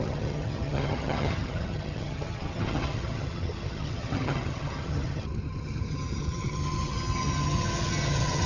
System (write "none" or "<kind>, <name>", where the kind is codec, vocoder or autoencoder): vocoder, HiFi-GAN